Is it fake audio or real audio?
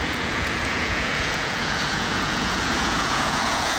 fake